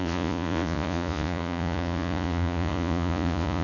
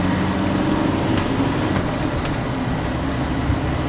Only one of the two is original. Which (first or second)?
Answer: second